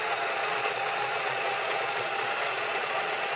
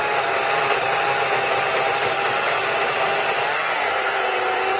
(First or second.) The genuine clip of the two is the second